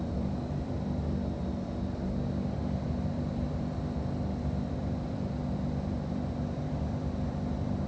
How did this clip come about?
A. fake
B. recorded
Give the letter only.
A